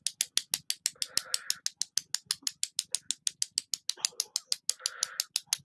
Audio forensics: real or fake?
real